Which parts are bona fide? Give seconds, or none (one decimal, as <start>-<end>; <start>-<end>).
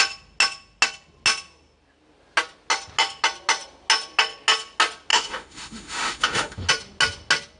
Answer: 0.0-5.1; 6.7-7.6